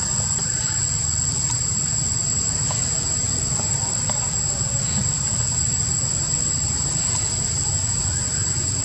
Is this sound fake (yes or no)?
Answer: no